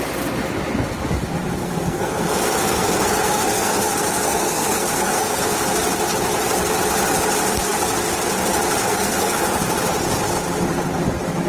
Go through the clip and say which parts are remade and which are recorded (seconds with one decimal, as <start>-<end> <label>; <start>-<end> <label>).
0.0-1.6 recorded; 1.6-5.4 remade; 5.4-8.8 recorded; 8.8-9.4 remade; 9.4-11.5 recorded